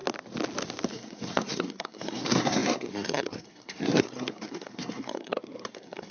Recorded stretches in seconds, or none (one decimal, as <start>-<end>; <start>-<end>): 0.0-0.9